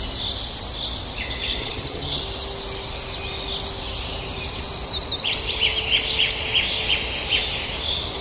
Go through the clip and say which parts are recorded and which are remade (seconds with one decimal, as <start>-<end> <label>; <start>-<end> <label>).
0.0-1.6 recorded; 1.6-2.2 remade; 2.2-8.2 recorded